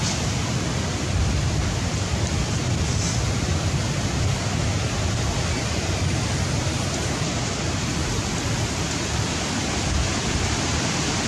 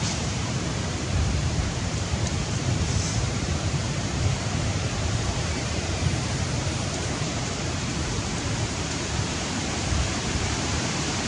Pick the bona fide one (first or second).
first